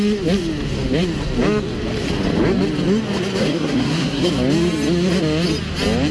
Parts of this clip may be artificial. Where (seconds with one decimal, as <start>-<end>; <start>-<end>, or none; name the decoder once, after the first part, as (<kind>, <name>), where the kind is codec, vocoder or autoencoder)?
3.4-4.3 (codec, SNAC)